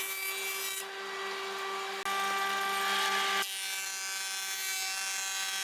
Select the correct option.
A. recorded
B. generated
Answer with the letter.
A